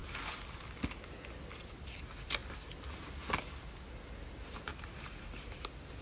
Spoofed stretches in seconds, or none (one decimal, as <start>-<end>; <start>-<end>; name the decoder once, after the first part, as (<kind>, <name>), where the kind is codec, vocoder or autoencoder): none